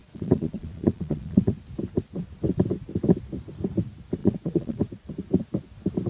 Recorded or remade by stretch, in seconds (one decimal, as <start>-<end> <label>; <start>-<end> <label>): 0.0-1.5 remade; 1.5-4.2 recorded; 4.2-4.8 remade; 4.8-6.1 recorded